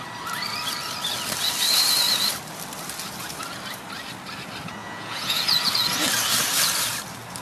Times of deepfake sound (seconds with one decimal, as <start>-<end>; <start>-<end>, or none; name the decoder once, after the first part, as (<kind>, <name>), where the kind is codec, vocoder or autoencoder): 4.8-5.4 (vocoder, Vocos)